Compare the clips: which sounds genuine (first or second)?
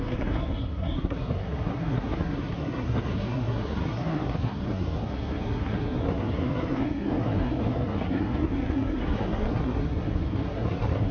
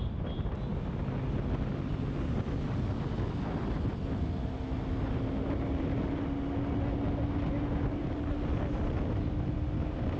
second